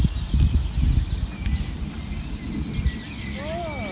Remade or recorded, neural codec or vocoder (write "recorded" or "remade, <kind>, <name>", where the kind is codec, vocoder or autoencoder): recorded